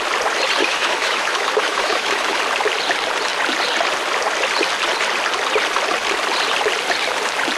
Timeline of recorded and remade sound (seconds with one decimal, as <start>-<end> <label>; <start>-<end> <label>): 0.0-0.6 recorded; 0.6-2.4 remade; 2.4-7.6 recorded